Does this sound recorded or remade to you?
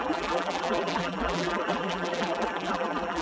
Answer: remade